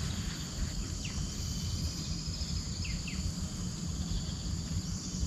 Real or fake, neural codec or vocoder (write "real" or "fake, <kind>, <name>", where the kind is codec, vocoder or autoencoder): real